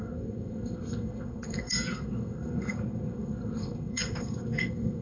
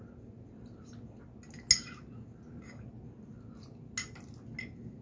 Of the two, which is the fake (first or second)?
first